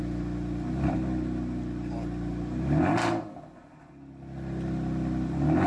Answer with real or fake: real